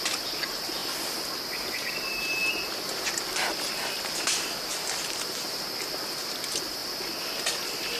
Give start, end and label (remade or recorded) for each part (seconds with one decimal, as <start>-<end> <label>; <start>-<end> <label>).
0.0-8.0 recorded

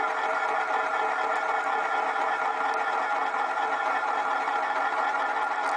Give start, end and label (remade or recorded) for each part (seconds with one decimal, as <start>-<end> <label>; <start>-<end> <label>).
0.0-5.8 recorded

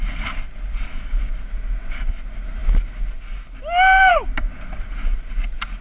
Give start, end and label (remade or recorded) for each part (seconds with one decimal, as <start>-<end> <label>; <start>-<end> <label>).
0.0-5.8 recorded

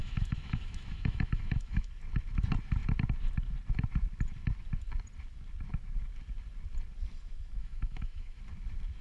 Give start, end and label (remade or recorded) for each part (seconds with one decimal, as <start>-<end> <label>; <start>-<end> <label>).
0.0-1.9 remade; 1.9-7.6 recorded; 7.6-8.4 remade; 8.4-9.0 recorded

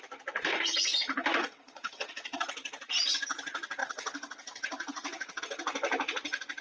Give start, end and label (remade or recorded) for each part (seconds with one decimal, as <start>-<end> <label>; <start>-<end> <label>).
0.0-1.4 recorded; 1.4-2.4 remade; 2.4-3.8 recorded; 3.8-5.4 remade; 5.4-6.6 recorded